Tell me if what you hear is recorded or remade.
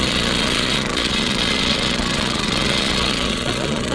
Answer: remade